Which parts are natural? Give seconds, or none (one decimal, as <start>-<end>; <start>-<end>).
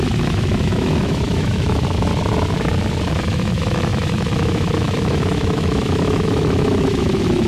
2.1-3.1